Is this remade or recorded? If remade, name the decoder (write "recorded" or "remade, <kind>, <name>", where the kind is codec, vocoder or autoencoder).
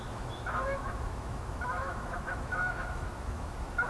remade, autoencoder, DAC-VAE